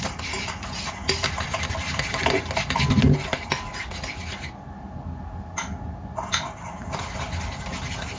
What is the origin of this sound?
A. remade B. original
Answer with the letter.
B